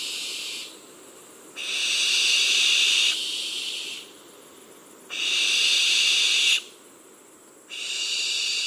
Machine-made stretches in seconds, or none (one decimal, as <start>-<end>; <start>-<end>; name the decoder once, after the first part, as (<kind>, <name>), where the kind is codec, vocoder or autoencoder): 0.0-1.6 (vocoder, BigVGAN v2); 2.3-5.7; 8.0-8.7